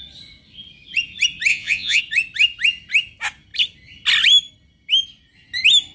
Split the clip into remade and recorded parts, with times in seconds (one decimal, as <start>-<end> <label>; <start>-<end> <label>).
0.0-1.5 recorded; 1.5-2.0 remade; 2.0-5.9 recorded